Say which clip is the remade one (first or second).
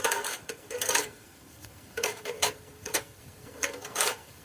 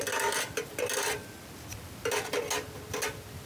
first